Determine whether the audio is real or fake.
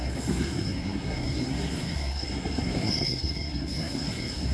fake